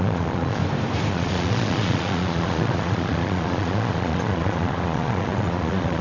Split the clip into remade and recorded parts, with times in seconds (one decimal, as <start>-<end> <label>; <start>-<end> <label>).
0.0-0.6 remade; 0.6-1.1 recorded; 1.1-6.0 remade